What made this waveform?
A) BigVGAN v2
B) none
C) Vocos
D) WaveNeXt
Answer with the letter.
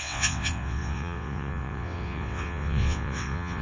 D